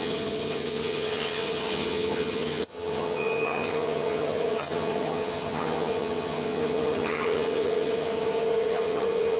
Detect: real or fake fake